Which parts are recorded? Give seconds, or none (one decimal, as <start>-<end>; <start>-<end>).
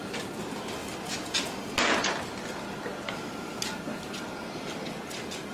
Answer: 0.0-5.5